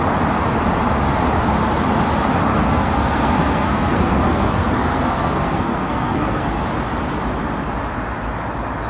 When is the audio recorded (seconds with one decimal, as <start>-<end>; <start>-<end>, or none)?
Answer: 0.0-2.5; 6.6-8.9